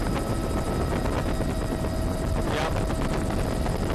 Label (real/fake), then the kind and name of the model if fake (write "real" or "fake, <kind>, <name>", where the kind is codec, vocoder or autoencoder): real